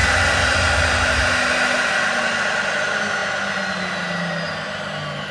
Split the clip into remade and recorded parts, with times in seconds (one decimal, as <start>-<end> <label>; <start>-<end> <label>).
0.0-5.3 recorded